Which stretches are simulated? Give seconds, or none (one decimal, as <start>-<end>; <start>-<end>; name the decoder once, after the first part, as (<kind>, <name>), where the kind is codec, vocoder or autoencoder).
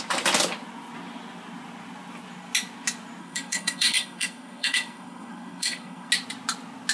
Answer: 3.2-6.1 (codec, SNAC)